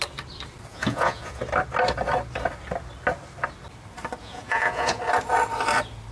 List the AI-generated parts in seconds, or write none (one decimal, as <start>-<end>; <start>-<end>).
0.7-1.4; 4.2-5.0

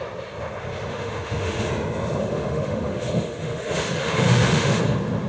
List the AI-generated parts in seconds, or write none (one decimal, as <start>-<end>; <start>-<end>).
0.9-1.7; 2.2-4.8

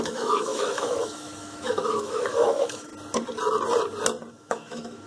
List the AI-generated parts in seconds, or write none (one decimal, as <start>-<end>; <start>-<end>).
0.0-2.9; 4.3-5.1

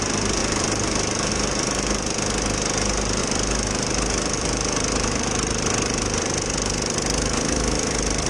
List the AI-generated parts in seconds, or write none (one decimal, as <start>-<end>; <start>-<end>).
3.2-8.3

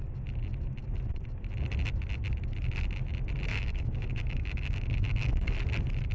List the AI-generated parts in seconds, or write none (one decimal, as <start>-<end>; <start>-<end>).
3.5-5.5

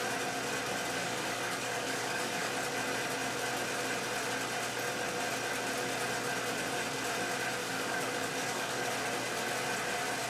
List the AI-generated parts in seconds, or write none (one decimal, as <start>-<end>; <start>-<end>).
1.0-2.5; 7.6-8.9